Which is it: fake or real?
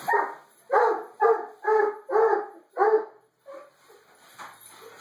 real